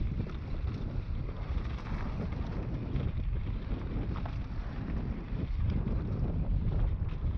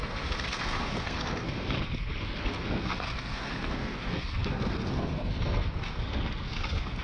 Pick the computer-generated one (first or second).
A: second